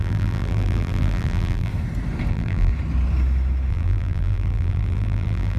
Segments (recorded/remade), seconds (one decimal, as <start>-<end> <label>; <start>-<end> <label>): 0.0-1.7 remade; 1.7-2.3 recorded; 2.3-2.7 remade; 2.7-3.7 recorded; 3.7-5.6 remade